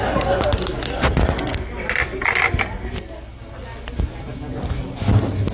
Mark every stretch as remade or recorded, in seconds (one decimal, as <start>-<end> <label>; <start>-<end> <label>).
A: 0.0-5.5 recorded